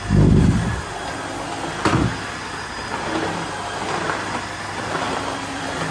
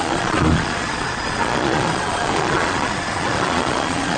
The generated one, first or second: second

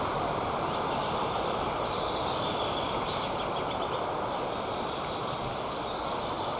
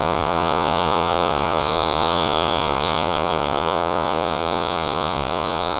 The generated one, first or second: second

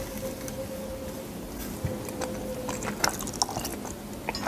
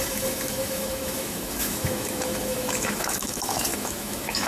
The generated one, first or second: second